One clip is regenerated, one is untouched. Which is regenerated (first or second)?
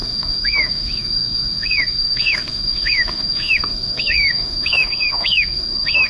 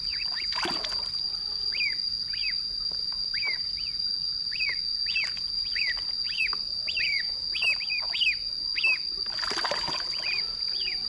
first